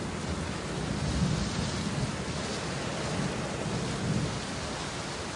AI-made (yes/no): no